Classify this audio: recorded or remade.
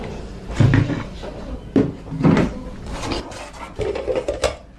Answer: recorded